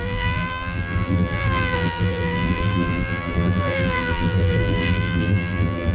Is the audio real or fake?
fake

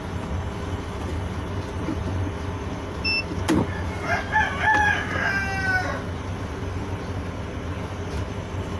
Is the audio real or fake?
real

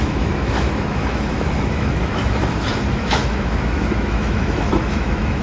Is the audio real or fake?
fake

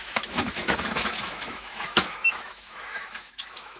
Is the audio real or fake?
fake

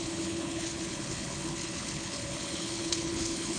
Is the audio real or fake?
fake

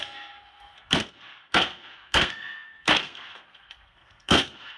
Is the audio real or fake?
fake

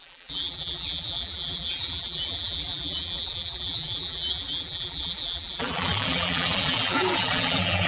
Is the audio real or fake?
fake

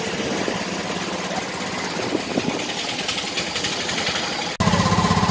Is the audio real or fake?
real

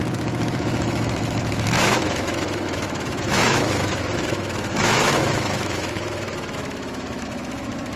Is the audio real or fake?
fake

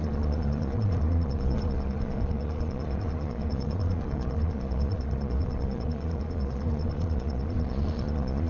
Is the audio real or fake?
fake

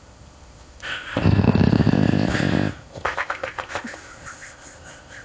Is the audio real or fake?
fake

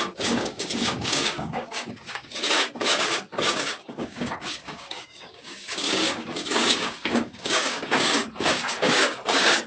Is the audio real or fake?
fake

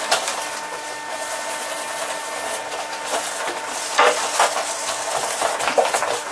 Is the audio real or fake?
real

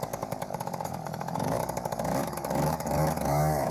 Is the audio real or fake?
fake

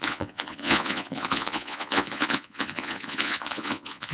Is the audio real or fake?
fake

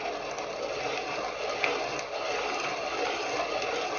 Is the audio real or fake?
real